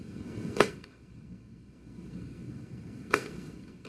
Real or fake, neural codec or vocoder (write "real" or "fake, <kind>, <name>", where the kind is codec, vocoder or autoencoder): fake, codec, SNAC